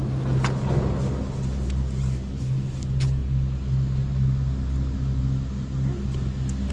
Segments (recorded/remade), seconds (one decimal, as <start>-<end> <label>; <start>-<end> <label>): 0.0-6.7 recorded